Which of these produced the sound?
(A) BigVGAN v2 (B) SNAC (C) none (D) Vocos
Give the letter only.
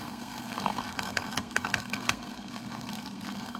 B